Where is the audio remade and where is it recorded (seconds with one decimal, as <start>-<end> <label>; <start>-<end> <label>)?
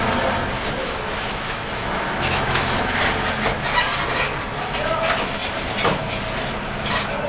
0.0-0.8 recorded; 0.8-3.0 remade; 3.0-7.3 recorded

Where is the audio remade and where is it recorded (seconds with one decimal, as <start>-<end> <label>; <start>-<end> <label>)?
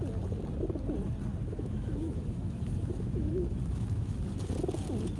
0.0-1.4 recorded; 1.4-4.5 remade; 4.5-5.2 recorded